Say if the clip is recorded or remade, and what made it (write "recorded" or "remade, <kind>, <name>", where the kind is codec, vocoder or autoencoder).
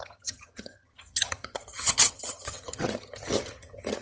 remade, vocoder, HiFi-GAN